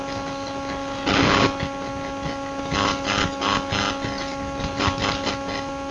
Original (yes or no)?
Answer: yes